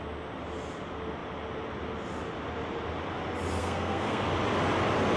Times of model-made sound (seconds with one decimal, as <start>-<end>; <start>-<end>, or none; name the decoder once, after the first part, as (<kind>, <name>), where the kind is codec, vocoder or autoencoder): 3.6-4.2 (codec, SNAC)